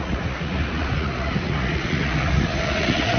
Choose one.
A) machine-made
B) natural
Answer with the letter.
A